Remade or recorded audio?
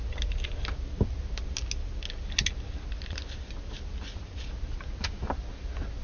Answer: recorded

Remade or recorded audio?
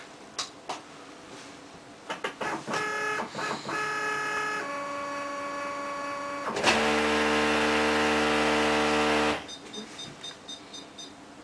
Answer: recorded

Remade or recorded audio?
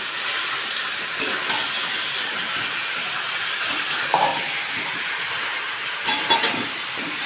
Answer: remade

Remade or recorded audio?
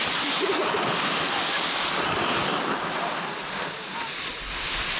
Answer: recorded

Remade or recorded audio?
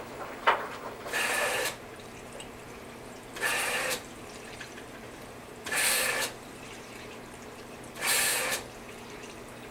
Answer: remade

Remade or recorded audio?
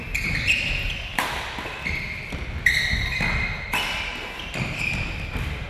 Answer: recorded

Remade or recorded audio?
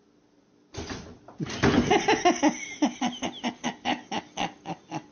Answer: recorded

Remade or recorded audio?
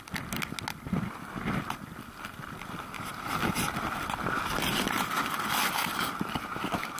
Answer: recorded